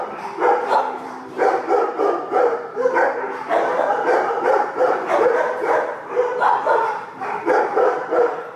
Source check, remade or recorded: remade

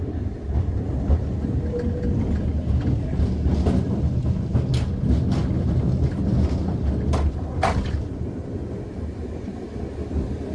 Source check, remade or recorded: recorded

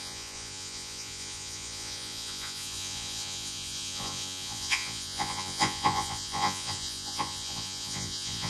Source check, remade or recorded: remade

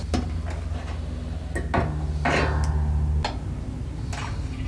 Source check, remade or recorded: recorded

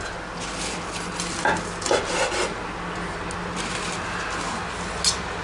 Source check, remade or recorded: recorded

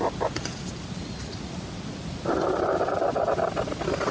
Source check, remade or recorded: recorded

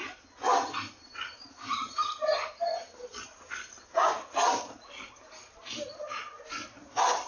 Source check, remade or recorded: recorded